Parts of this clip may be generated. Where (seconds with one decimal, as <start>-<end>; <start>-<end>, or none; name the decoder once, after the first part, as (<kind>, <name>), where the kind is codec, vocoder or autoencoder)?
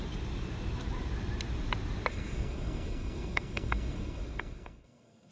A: 2.1-5.3 (codec, SNAC)